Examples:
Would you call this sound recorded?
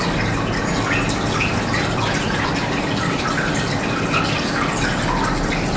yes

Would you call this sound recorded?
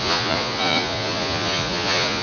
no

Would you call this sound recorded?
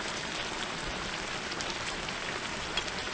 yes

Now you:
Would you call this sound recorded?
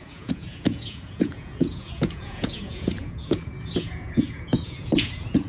no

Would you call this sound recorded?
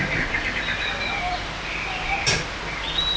yes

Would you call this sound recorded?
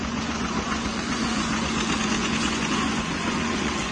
no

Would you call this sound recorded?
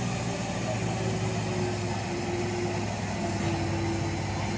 yes